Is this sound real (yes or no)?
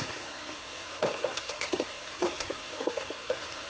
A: no